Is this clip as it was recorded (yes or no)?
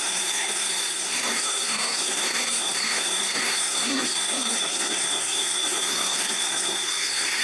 no